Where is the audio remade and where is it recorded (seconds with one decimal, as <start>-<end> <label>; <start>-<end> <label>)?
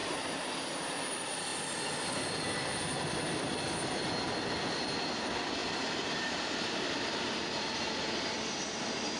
0.0-1.0 remade; 1.0-5.6 recorded; 5.6-7.4 remade; 7.4-9.2 recorded